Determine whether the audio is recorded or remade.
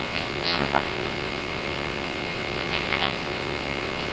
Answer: remade